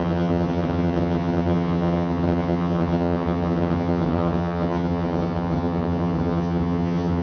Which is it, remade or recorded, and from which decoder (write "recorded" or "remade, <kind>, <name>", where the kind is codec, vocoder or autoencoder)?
remade, vocoder, HiFi-GAN